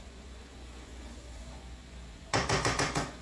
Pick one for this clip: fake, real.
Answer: fake